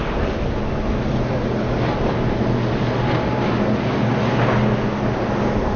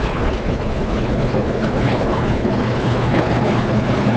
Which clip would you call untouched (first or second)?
first